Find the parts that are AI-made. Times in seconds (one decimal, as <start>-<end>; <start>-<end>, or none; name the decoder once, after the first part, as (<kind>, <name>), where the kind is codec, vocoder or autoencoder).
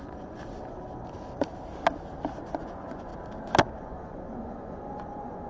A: 0.0-0.4 (vocoder, Vocos); 2.6-3.1; 3.8-5.5